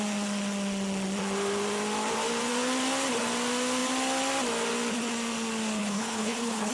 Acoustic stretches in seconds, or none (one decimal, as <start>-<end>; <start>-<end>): 0.0-5.8